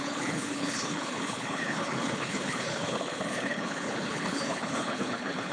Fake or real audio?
fake